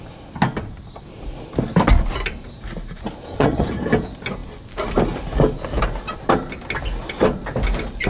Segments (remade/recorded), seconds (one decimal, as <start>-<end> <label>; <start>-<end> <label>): 0.0-3.3 recorded; 3.3-3.8 remade; 3.8-8.1 recorded